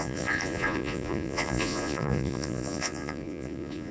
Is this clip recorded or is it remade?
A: remade